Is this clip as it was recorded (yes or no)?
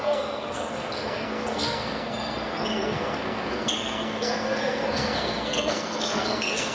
no